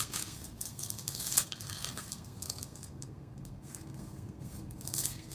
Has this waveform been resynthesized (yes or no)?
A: yes